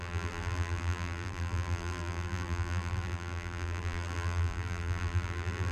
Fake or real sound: fake